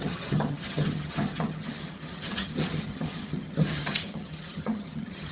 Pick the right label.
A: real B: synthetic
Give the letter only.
B